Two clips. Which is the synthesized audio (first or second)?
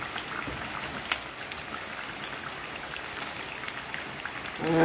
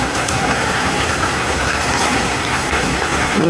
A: second